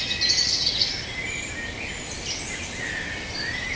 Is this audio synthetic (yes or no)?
no